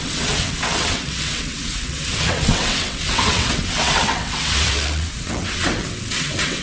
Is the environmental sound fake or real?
fake